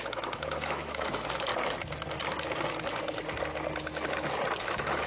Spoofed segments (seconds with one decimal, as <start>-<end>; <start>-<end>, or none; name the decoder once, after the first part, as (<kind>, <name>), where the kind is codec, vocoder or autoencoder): 0.0-1.5 (autoencoder, DAC-VAE); 4.6-5.1